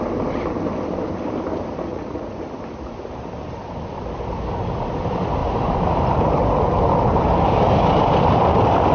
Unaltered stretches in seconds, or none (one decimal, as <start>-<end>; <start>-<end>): 0.0-1.9; 2.4-8.9